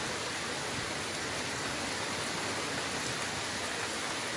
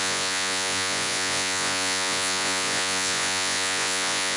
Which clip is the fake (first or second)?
second